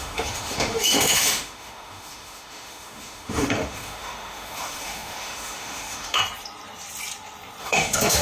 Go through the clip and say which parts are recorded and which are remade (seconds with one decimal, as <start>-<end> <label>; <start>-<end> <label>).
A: 0.0-6.2 remade; 6.2-7.6 recorded; 7.6-8.2 remade